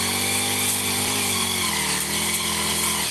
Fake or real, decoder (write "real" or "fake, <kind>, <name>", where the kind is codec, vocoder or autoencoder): real